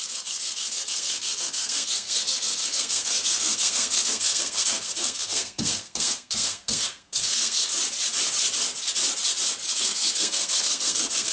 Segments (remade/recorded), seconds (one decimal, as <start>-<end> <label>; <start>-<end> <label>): 0.0-7.7 remade; 7.7-9.7 recorded; 9.7-11.3 remade